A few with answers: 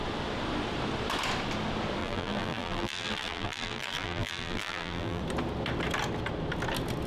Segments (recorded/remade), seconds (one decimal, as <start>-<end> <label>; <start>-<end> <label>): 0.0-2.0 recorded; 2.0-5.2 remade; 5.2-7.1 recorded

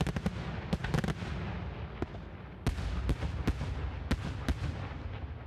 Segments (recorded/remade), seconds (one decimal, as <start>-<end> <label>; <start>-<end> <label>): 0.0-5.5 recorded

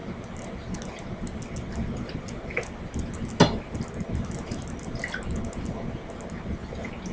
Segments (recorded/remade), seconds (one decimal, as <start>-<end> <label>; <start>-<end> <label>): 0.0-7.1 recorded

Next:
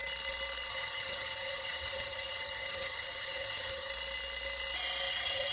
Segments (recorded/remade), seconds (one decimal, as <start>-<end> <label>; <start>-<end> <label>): 0.0-0.7 recorded; 0.7-3.9 remade; 3.9-5.1 recorded; 5.1-5.5 remade

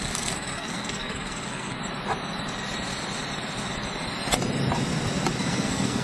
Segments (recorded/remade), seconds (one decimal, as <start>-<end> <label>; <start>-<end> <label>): 0.0-1.8 remade; 1.8-5.4 recorded; 5.4-6.0 remade